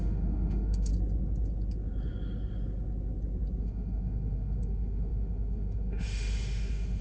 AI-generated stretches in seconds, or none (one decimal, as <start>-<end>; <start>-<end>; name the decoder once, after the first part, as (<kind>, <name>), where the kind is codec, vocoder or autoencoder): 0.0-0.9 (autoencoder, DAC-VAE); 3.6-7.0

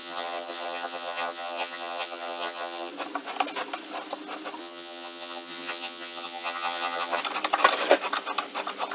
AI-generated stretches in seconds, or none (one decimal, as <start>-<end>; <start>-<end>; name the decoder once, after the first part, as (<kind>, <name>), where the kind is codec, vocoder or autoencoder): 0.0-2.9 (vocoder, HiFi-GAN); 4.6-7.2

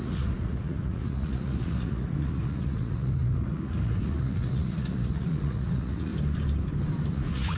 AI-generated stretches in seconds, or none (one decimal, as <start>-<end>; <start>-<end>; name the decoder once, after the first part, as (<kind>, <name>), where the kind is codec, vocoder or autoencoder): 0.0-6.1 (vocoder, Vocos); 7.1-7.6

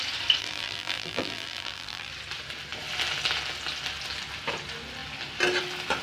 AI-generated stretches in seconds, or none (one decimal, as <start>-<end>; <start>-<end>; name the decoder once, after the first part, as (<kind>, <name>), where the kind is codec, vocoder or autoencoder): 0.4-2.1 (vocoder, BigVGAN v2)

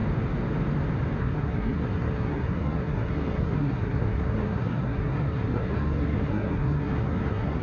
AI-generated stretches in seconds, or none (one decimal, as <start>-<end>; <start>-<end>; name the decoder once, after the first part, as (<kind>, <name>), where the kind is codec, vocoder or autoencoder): 1.2-7.6 (codec, SNAC)

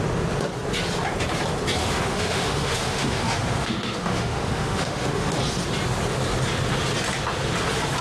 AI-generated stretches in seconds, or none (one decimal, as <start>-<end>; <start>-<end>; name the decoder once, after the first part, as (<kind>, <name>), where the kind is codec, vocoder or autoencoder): 1.8-5.4 (autoencoder, DAC-VAE)